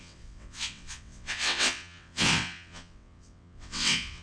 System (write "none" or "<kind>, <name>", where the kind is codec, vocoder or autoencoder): vocoder, WaveNeXt